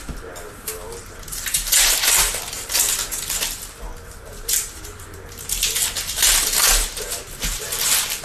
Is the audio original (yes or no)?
no